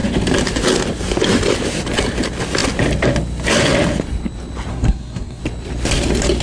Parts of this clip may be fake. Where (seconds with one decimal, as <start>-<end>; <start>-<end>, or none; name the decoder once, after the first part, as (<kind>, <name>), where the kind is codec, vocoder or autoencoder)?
4.7-5.4 (codec, SNAC)